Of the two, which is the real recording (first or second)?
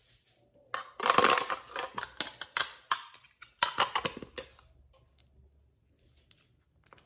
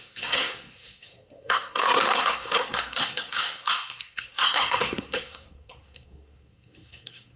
first